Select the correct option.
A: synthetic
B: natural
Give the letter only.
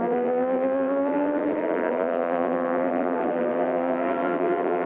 A